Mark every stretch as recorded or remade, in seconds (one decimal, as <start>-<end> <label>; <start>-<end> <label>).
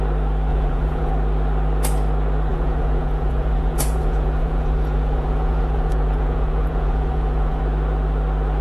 0.0-0.5 recorded; 0.5-1.1 remade; 1.1-2.5 recorded; 2.5-7.6 remade; 7.6-8.6 recorded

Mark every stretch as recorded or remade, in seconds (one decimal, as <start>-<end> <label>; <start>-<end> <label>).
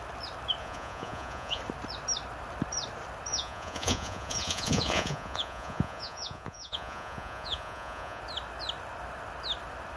0.0-0.6 recorded; 0.6-1.6 remade; 1.6-3.3 recorded; 3.3-8.2 remade; 8.2-10.0 recorded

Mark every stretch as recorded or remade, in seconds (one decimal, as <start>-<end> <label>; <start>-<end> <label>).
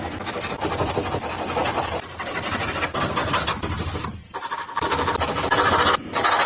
0.0-1.6 recorded; 1.6-2.7 remade; 2.7-3.2 recorded; 3.2-4.5 remade; 4.5-6.5 recorded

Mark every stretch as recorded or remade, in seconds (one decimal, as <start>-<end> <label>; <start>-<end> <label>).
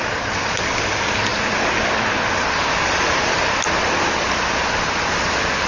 0.0-5.7 recorded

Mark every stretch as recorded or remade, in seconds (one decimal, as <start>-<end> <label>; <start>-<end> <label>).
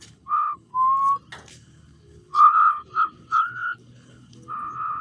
0.0-0.7 remade; 0.7-1.5 recorded; 1.5-5.0 remade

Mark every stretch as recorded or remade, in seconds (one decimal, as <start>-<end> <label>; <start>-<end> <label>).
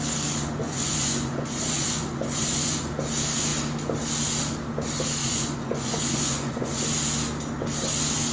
0.0-0.6 recorded; 0.6-2.9 remade; 2.9-5.2 recorded; 5.2-6.8 remade; 6.8-8.3 recorded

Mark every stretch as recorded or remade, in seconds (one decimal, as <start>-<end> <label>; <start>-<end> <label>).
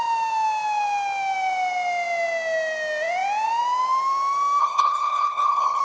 0.0-4.6 recorded; 4.6-5.8 remade